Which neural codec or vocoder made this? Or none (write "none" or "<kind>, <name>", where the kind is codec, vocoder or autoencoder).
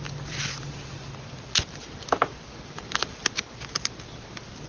none